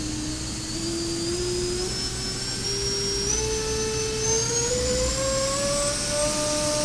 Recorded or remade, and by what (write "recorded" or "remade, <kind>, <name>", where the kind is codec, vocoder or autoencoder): recorded